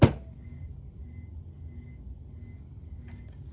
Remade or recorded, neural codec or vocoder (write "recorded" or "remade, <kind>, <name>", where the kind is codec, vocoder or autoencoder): recorded